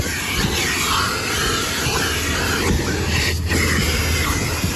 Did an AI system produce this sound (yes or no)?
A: no